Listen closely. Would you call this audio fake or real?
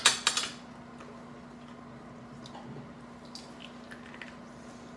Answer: real